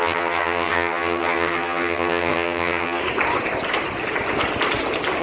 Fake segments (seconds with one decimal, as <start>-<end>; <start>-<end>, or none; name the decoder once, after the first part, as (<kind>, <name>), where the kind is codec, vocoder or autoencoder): 0.0-3.0 (vocoder, HiFi-GAN)